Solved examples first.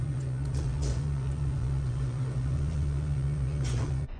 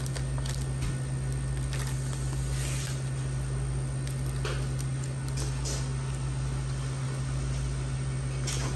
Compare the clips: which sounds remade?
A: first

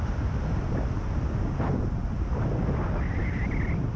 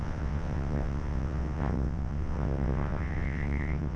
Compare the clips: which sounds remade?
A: second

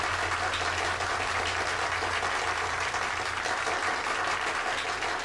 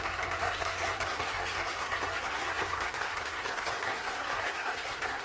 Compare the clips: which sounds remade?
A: second